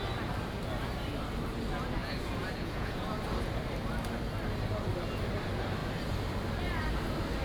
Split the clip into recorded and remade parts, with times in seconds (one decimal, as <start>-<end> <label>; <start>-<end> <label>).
0.0-2.0 recorded; 2.0-3.1 remade; 3.1-7.4 recorded